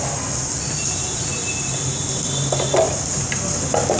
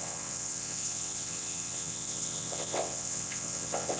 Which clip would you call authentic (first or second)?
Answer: first